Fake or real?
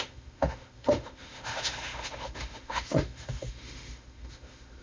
fake